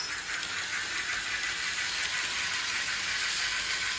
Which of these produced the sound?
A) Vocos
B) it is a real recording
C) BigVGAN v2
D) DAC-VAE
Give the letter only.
B